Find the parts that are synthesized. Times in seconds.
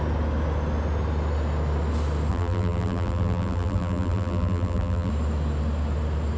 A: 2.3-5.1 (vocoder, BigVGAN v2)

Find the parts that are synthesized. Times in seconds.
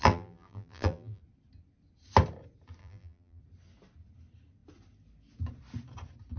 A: 0.0-1.2 (vocoder, BigVGAN v2); 2.8-3.4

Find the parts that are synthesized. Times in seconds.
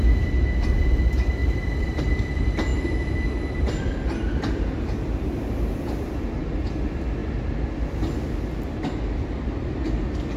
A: 1.4-2.0 (vocoder, BigVGAN v2)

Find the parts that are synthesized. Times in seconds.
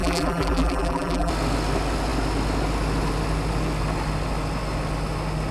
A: 0.0-1.3 (vocoder, BigVGAN v2)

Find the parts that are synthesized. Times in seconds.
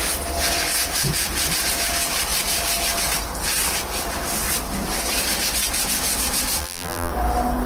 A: 6.6-7.1 (vocoder, BigVGAN v2)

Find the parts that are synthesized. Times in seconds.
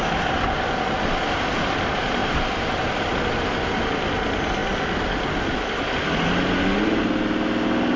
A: 2.2-3.3 (vocoder, BigVGAN v2)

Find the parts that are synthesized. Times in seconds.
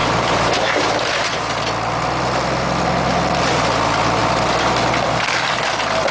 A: 0.0-1.4 (vocoder, BigVGAN v2)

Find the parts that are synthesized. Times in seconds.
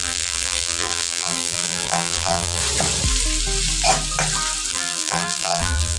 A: 0.0-2.6 (vocoder, BigVGAN v2); 4.7-6.0